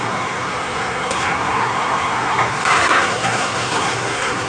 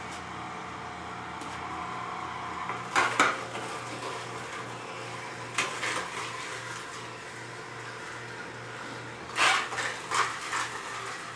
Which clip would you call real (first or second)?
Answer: second